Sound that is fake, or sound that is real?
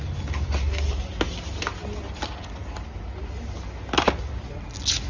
real